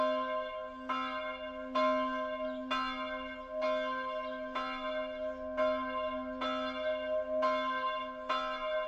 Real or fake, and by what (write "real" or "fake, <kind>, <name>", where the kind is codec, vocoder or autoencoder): real